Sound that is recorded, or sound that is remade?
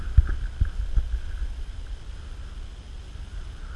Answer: recorded